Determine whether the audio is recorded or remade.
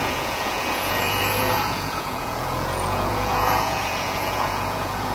remade